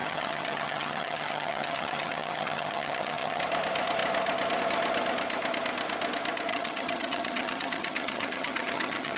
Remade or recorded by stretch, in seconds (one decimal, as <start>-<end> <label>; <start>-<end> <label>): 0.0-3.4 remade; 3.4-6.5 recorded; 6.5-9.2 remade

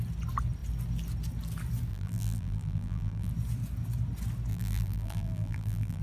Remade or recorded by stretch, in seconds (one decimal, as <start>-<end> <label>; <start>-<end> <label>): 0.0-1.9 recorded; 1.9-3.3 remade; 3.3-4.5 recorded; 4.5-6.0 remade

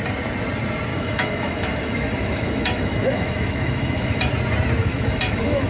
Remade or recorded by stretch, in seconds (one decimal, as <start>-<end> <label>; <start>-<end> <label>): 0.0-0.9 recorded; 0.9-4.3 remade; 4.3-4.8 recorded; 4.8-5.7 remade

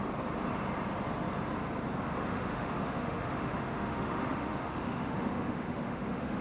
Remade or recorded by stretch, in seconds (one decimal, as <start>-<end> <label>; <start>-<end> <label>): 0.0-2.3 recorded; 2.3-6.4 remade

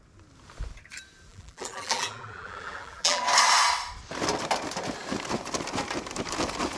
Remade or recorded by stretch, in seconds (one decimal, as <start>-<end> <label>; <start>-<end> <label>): 0.0-1.3 recorded; 1.3-3.2 remade; 3.2-6.8 recorded

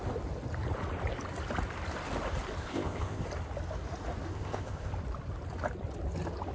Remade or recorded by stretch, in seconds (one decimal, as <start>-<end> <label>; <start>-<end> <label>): 0.0-2.6 recorded; 2.6-3.2 remade; 3.2-4.3 recorded; 4.3-4.9 remade; 4.9-6.5 recorded

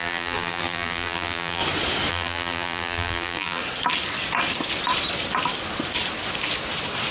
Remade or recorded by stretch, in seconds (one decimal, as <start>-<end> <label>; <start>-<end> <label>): 0.0-1.6 remade; 1.6-2.1 recorded; 2.1-3.6 remade; 3.6-7.1 recorded

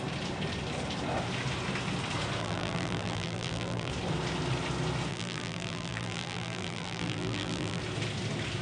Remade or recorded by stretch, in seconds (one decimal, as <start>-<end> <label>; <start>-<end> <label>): 0.0-2.4 recorded; 2.4-3.9 remade; 3.9-5.1 recorded; 5.1-7.8 remade; 7.8-8.6 recorded